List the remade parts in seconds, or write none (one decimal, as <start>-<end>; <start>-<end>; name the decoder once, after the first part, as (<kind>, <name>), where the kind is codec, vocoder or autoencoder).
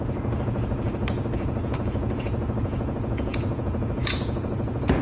0.0-5.0 (vocoder, Vocos)